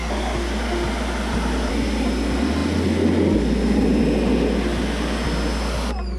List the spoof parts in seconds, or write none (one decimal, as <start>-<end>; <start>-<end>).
none